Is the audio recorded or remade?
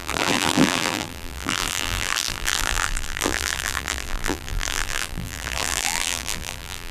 remade